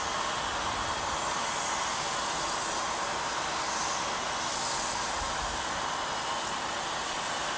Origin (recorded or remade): recorded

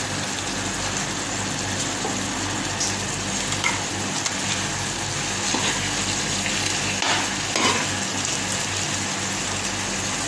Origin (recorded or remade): recorded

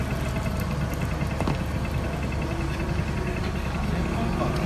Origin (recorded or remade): recorded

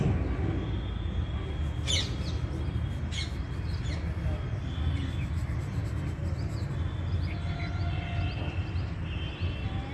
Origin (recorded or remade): recorded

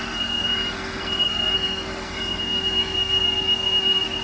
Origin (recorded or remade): remade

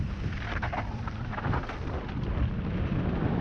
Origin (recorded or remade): recorded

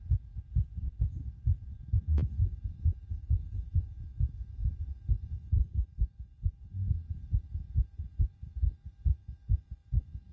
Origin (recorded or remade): recorded